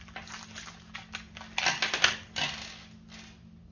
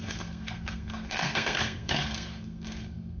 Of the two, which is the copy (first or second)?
second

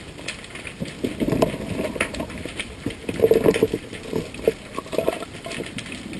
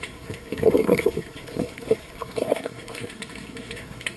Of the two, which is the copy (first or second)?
second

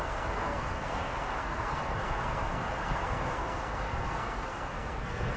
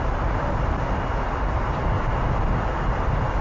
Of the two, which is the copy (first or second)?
first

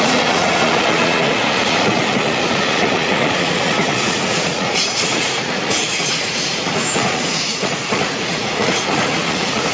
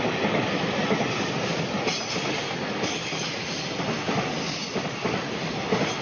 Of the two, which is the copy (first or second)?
first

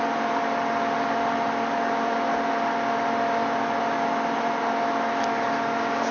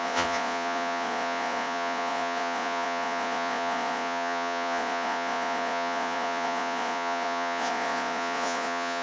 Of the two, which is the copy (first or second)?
second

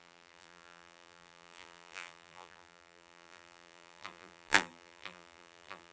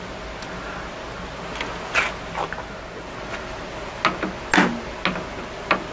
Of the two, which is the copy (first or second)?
first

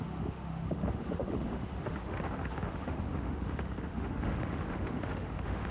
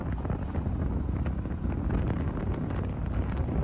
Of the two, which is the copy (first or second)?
first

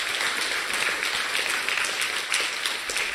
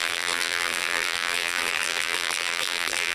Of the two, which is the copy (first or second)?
second